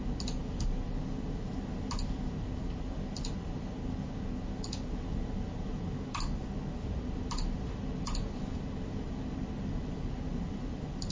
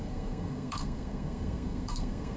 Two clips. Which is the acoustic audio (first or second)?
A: first